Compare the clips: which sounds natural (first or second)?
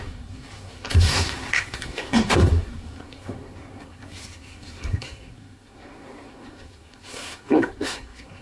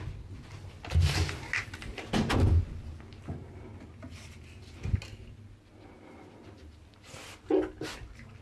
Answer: second